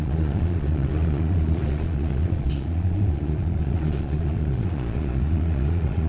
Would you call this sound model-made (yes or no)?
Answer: yes